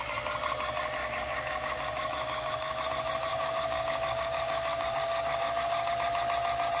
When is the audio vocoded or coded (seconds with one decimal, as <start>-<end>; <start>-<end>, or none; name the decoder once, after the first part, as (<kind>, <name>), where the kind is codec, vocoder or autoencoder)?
1.0-2.9 (codec, DAC); 3.3-5.9